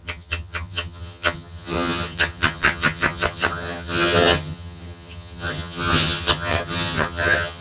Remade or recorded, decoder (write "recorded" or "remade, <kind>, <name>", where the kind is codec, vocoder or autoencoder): remade, vocoder, HiFi-GAN